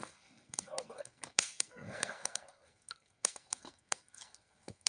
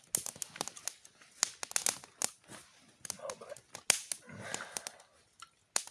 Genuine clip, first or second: second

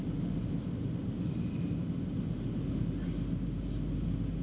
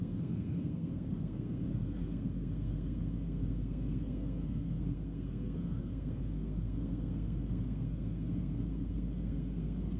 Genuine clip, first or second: first